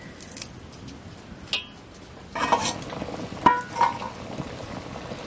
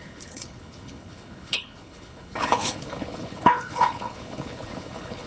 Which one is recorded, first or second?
first